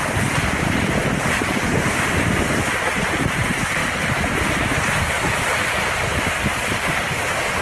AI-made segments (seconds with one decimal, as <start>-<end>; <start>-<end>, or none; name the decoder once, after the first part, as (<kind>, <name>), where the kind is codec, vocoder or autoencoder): 3.8-6.9 (vocoder, BigVGAN v2)